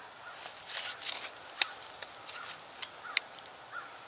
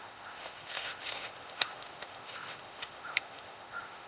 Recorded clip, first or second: first